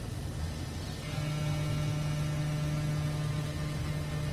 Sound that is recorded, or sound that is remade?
recorded